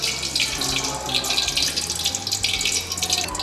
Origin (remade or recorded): recorded